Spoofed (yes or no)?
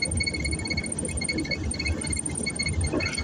no